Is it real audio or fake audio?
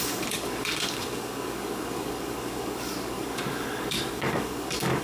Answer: fake